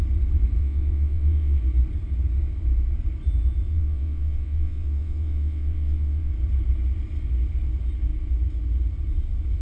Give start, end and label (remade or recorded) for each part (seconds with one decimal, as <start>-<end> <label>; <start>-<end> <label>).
0.0-0.6 recorded; 0.6-1.6 remade; 1.6-3.7 recorded; 3.7-6.3 remade; 6.3-9.6 recorded